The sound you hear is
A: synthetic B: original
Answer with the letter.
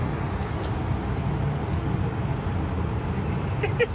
B